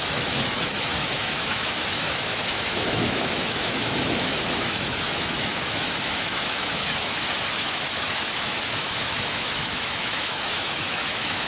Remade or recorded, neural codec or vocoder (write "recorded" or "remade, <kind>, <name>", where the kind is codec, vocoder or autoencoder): remade, autoencoder, DAC-VAE